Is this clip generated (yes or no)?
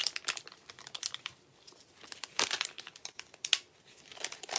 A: no